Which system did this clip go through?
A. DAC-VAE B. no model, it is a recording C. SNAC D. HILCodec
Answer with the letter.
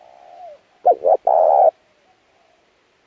B